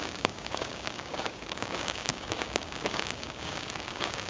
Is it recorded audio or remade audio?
remade